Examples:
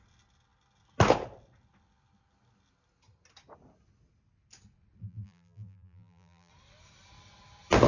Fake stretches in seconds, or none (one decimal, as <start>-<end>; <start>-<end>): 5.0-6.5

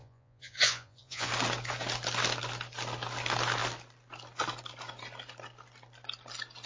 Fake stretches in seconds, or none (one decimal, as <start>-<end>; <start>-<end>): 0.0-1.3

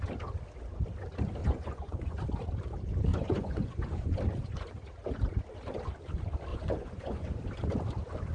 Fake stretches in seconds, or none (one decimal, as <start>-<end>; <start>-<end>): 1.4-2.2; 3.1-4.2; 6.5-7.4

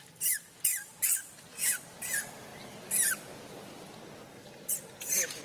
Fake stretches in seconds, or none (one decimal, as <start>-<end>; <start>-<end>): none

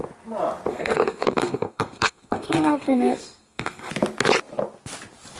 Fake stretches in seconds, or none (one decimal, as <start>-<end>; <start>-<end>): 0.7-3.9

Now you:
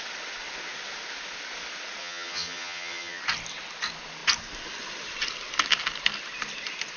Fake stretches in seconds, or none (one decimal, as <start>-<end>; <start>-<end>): 2.0-3.2